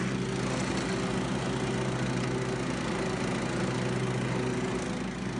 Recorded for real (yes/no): yes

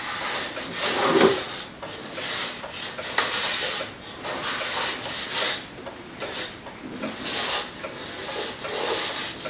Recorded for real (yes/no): yes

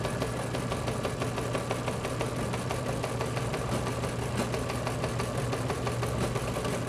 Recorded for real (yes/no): yes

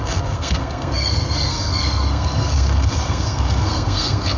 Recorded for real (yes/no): no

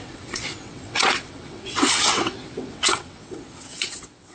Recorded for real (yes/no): no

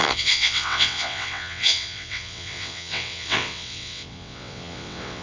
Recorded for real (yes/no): no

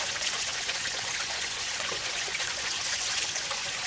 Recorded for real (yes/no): no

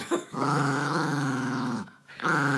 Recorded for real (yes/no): no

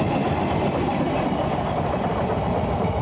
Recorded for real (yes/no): yes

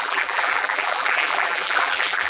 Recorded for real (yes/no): no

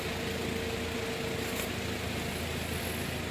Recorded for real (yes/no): yes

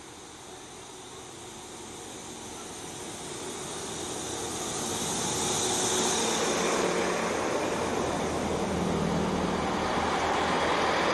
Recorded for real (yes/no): yes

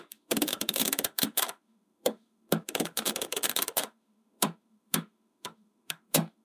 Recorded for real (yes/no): no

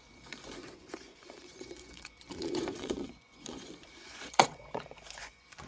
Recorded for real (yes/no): no